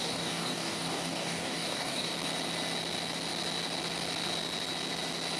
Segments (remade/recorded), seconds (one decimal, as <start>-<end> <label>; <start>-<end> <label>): 0.0-2.1 remade; 2.1-5.4 recorded